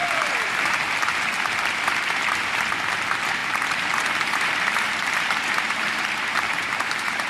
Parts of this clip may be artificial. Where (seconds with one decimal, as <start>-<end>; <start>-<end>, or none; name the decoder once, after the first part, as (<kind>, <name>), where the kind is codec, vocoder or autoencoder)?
0.0-0.8 (vocoder, BigVGAN v2); 3.4-7.3